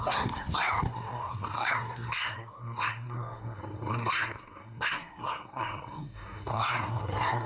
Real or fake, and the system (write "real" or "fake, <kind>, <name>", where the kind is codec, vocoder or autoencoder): fake, codec, SNAC